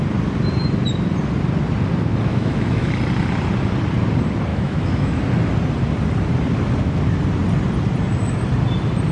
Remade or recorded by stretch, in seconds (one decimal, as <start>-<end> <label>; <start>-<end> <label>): 0.0-2.3 recorded; 2.3-2.9 remade; 2.9-4.5 recorded; 4.5-5.2 remade; 5.2-9.1 recorded

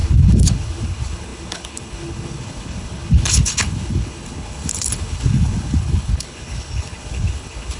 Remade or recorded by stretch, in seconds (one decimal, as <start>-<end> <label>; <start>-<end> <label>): 0.0-7.8 remade

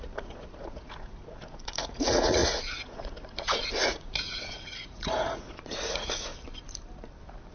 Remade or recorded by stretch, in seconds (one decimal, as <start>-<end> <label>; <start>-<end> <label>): 0.0-6.3 remade; 6.3-7.5 recorded

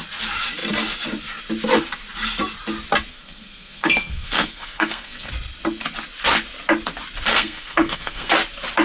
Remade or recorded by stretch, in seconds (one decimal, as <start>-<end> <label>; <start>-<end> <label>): 0.0-3.1 recorded; 3.1-5.3 remade; 5.3-7.3 recorded; 7.3-8.3 remade; 8.3-8.8 recorded

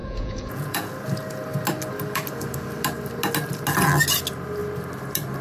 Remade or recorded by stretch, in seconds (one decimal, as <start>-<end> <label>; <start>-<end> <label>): 0.0-0.9 remade; 0.9-5.4 recorded